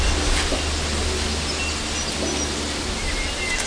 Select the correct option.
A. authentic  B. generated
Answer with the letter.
A